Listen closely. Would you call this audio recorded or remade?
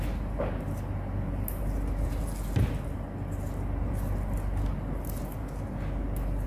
recorded